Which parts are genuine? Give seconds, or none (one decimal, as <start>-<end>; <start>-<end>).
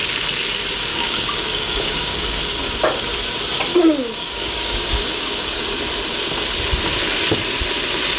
0.0-0.9; 2.4-3.7; 5.6-8.2